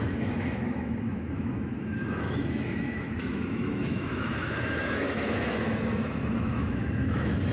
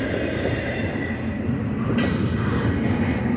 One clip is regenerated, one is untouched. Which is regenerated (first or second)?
first